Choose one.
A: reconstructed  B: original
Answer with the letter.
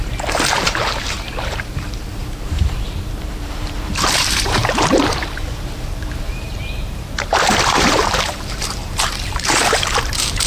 A